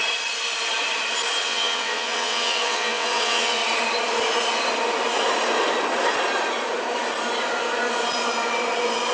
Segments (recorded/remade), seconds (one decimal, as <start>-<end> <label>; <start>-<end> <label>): 0.0-1.4 recorded; 1.4-3.6 remade; 3.6-9.1 recorded